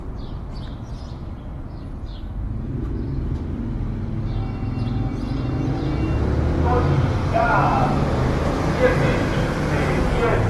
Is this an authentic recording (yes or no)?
yes